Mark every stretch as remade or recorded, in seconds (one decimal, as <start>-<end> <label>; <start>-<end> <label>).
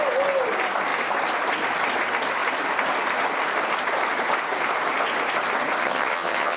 0.0-5.8 recorded; 5.8-6.6 remade